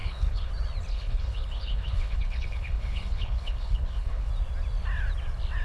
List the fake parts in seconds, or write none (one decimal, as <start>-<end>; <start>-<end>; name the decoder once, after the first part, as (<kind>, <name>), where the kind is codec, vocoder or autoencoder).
0.0-0.5 (codec, HILCodec); 0.9-4.3